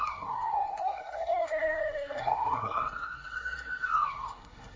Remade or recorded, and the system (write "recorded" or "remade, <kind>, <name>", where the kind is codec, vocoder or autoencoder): remade, codec, SNAC